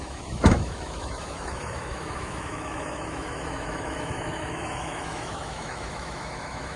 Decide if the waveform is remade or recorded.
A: remade